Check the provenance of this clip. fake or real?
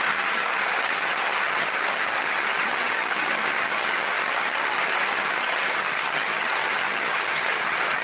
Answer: fake